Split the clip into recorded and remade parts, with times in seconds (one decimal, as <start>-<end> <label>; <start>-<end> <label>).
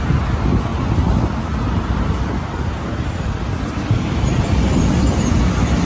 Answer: 0.0-5.9 recorded